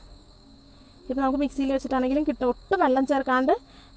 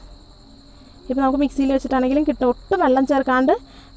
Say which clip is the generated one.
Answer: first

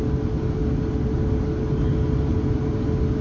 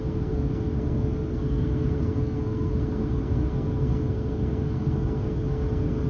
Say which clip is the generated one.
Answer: second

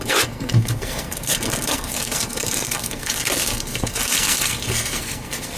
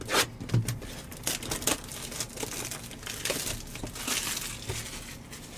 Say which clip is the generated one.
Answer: first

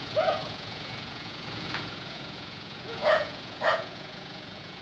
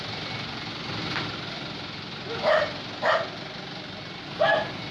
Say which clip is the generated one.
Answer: first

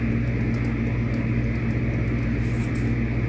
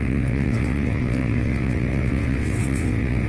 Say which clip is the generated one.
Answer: second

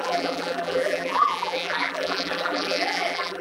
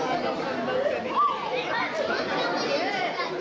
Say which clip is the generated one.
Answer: first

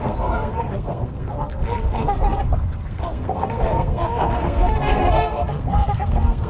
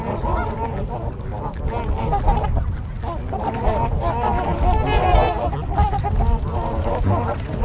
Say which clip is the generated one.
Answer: first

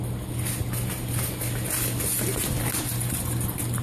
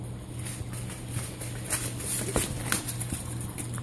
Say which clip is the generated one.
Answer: second